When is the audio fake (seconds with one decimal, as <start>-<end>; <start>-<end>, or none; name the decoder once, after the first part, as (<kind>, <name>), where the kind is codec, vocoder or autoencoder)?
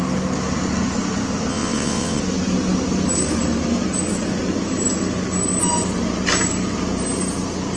1.5-2.2 (vocoder, WaveNeXt)